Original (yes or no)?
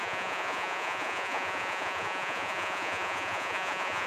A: no